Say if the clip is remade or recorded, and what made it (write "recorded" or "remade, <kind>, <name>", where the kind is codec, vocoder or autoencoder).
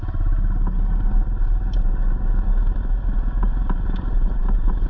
recorded